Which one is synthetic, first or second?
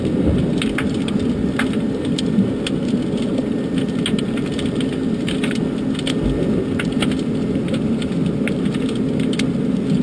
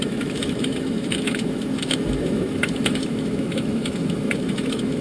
second